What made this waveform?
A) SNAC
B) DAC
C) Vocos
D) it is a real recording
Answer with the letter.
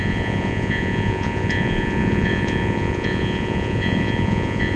C